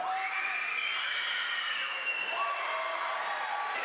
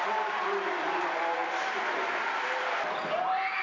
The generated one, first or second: second